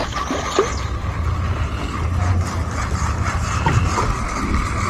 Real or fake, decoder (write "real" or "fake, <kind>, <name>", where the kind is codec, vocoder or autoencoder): real